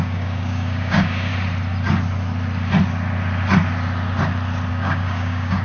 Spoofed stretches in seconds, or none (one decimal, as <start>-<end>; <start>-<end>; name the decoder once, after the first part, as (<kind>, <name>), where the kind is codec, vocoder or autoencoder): 0.0-1.3 (codec, DAC); 4.7-5.6